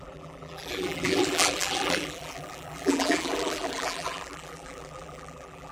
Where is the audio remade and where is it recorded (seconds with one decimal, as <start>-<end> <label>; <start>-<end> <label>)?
0.0-5.7 remade